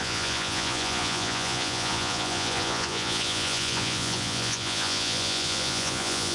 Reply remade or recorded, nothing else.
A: remade